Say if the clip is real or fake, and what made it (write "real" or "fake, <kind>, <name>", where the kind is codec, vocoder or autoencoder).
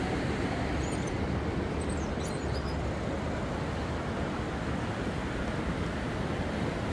real